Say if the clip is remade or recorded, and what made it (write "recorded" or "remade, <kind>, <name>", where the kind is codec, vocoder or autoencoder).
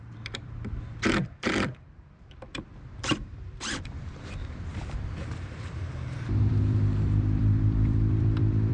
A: remade, vocoder, BigVGAN v2